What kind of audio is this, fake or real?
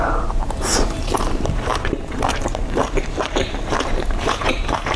fake